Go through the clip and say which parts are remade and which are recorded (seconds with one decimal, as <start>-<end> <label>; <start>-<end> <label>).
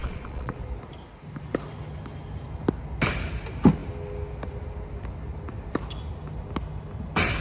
0.0-0.6 remade; 0.6-7.4 recorded